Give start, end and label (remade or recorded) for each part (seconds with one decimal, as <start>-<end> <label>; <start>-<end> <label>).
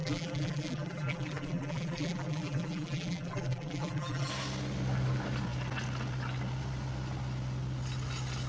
0.0-4.3 remade; 4.3-8.5 recorded